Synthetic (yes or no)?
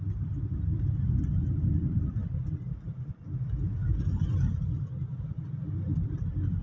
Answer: no